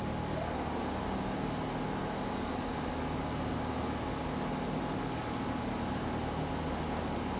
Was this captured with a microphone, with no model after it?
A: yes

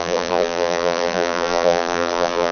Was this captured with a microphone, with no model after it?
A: no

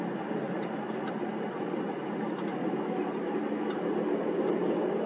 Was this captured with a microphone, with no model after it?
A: yes